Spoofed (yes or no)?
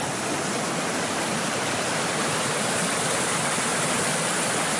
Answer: no